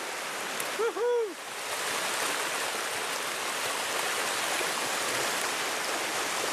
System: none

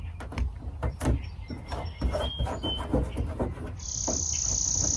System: none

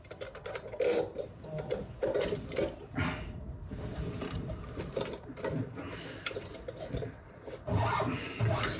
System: vocoder, BigVGAN v2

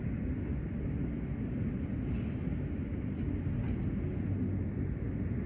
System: none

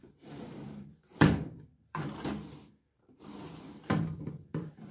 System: vocoder, BigVGAN v2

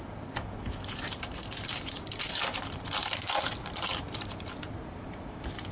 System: vocoder, BigVGAN v2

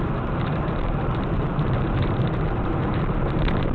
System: vocoder, BigVGAN v2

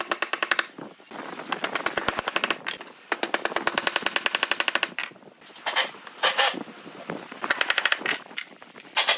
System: none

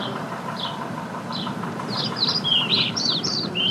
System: vocoder, BigVGAN v2